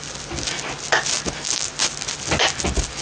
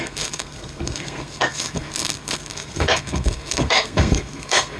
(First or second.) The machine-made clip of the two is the second